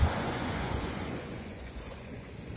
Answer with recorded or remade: remade